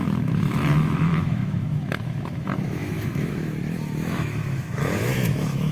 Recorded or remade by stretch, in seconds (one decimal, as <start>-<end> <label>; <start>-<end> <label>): 0.0-5.7 remade